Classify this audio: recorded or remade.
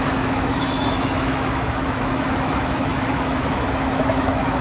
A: remade